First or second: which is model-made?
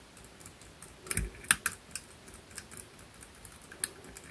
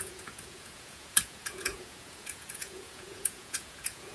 second